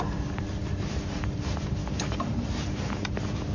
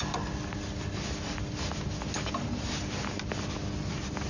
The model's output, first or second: first